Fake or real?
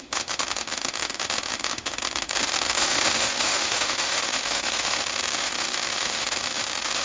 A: fake